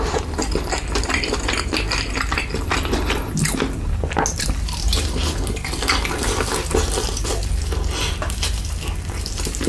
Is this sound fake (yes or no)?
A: no